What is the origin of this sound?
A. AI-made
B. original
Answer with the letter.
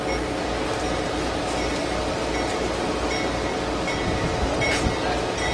B